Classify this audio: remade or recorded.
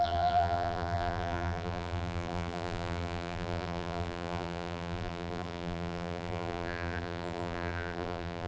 remade